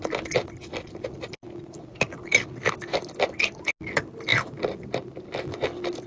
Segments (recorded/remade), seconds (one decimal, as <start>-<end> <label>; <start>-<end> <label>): 0.0-6.1 recorded